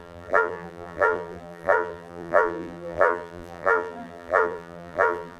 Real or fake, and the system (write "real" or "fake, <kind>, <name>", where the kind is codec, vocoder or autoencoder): fake, vocoder, BigVGAN v2